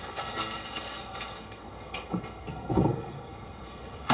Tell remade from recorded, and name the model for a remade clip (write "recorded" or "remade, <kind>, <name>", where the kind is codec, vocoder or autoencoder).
remade, codec, SNAC